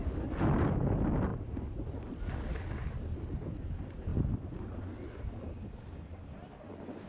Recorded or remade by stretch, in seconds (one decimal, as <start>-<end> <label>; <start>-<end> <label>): 0.0-7.1 recorded